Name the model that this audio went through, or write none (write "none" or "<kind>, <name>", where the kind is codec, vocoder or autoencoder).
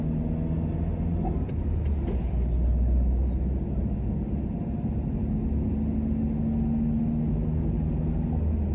none